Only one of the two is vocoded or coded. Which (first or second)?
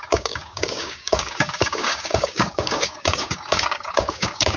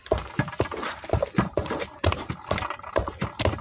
first